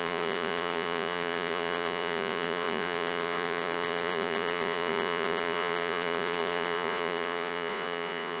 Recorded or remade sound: remade